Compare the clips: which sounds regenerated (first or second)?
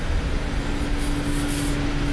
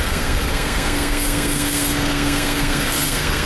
second